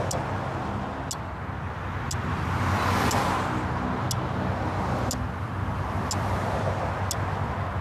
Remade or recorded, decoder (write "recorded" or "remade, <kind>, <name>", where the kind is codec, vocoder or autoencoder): recorded